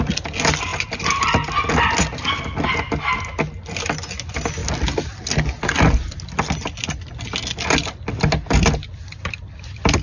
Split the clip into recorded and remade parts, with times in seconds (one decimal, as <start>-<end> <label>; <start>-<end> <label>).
0.0-10.0 recorded